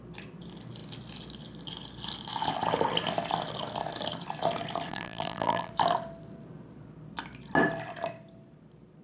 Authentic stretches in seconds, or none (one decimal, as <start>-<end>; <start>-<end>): 0.0-4.9; 5.7-9.0